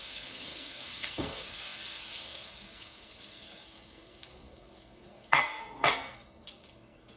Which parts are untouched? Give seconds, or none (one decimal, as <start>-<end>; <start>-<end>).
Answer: none